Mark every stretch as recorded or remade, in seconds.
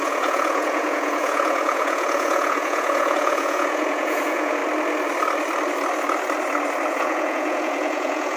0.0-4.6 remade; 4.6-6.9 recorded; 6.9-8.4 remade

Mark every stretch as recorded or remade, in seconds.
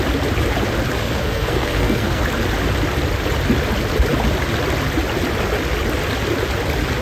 0.0-1.0 recorded; 1.0-2.2 remade; 2.2-7.0 recorded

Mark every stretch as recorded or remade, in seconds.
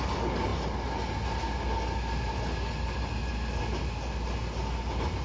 0.0-5.2 recorded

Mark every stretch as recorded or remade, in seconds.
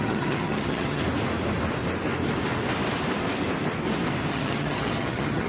0.0-1.0 remade; 1.0-4.3 recorded; 4.3-5.5 remade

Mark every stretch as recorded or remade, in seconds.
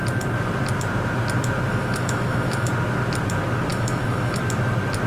0.0-1.7 recorded; 1.7-2.7 remade; 2.7-3.7 recorded; 3.7-4.4 remade; 4.4-5.1 recorded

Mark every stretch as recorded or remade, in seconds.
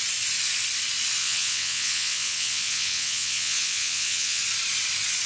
0.0-1.2 recorded; 1.2-4.4 remade; 4.4-5.3 recorded